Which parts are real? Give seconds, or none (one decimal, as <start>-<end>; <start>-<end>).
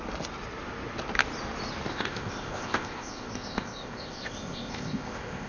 0.0-1.9